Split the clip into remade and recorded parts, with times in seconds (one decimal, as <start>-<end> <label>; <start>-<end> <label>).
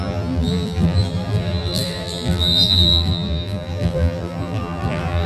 0.0-5.3 remade